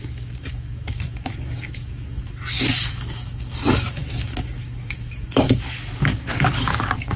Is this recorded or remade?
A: remade